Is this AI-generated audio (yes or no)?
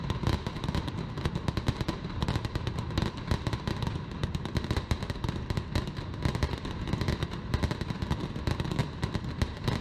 no